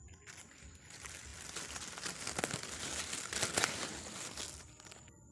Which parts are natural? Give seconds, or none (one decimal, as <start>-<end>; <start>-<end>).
0.0-5.3